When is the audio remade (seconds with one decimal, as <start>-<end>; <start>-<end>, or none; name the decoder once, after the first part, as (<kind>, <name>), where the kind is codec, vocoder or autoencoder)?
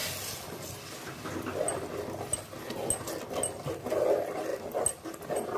none